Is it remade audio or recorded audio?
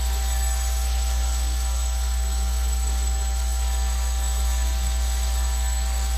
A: remade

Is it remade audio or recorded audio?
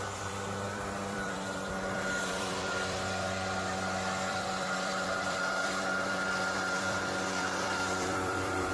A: remade